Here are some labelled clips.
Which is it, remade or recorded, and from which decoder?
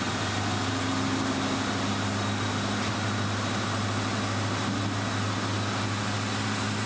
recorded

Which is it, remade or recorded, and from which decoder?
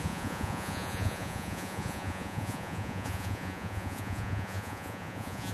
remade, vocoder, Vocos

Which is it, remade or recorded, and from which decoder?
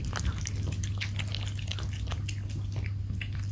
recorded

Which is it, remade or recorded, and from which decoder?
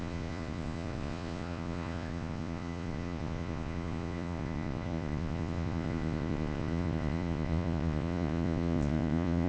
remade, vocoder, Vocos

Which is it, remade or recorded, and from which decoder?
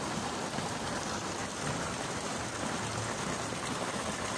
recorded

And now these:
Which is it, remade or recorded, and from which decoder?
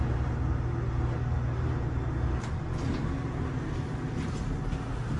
recorded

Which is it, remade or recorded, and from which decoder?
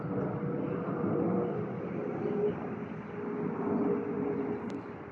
recorded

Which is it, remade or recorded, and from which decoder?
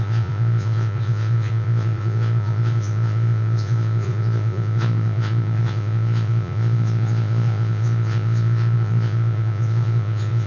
remade, vocoder, Vocos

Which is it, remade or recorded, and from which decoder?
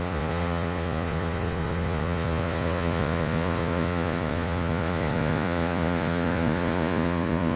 remade, vocoder, Vocos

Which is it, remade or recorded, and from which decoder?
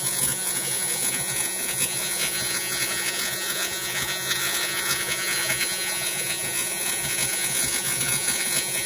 remade, vocoder, Vocos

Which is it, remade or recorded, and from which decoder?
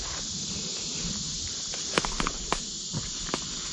recorded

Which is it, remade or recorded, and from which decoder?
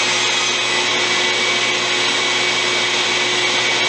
recorded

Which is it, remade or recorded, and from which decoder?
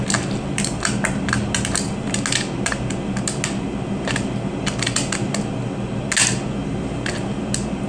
recorded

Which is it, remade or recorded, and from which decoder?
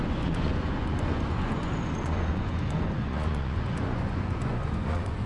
remade, vocoder, Vocos